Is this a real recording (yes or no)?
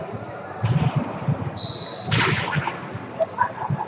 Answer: yes